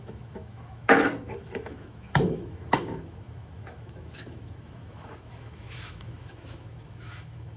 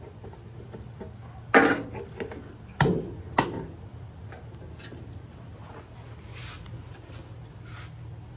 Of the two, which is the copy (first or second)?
first